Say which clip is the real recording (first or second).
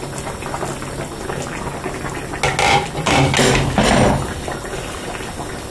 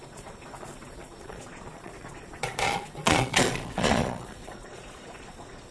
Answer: first